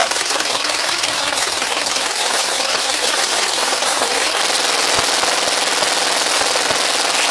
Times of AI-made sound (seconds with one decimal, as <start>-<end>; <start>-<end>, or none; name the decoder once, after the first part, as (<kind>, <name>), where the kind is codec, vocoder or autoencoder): 0.0-4.4 (codec, SNAC)